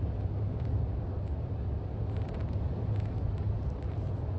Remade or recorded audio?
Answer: recorded